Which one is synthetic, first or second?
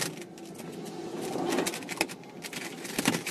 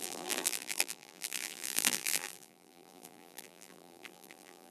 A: second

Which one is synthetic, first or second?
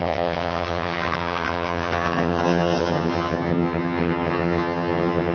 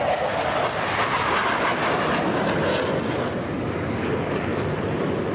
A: first